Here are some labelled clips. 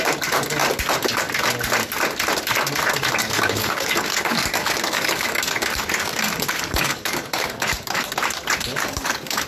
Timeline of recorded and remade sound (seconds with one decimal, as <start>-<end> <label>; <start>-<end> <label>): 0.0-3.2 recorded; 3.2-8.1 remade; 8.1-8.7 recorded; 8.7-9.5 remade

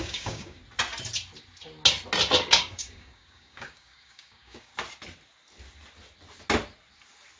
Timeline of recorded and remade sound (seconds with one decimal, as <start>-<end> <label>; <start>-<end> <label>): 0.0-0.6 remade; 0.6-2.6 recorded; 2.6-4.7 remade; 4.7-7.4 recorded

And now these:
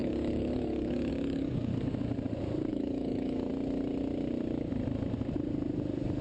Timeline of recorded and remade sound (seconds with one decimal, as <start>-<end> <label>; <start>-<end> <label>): 0.0-1.7 remade; 1.7-2.7 recorded; 2.7-3.5 remade; 3.5-6.2 recorded